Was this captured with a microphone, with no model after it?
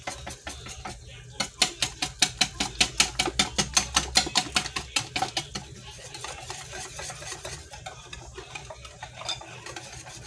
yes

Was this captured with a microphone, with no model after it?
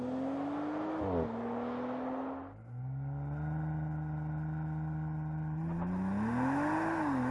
yes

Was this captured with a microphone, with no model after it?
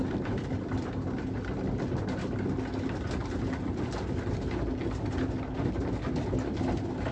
yes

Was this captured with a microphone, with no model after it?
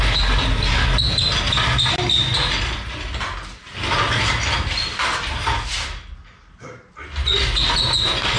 yes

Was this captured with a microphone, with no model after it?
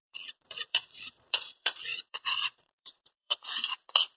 no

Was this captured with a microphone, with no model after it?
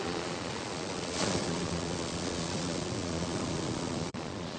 no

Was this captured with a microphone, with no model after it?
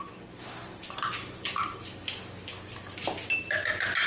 yes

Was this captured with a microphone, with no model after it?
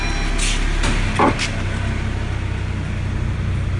yes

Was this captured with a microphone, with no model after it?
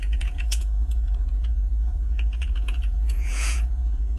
no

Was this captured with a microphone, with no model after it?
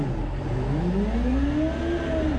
yes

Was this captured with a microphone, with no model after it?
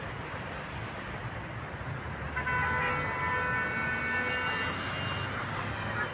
yes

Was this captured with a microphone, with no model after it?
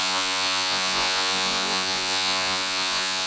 no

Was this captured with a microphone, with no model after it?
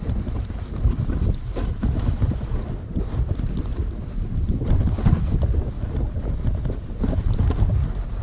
yes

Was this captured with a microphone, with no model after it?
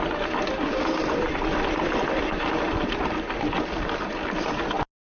yes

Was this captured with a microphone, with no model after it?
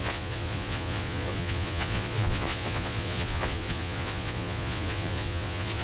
no